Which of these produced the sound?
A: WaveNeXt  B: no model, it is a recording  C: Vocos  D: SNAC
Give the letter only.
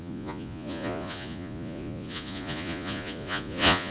C